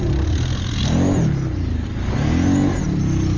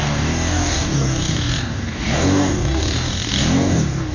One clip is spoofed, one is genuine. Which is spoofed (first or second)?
second